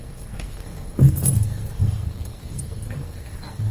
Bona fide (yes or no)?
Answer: no